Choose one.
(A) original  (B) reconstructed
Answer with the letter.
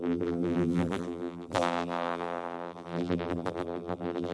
B